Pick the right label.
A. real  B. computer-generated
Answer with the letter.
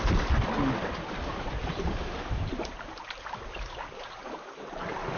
A